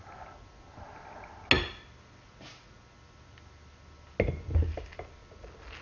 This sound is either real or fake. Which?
real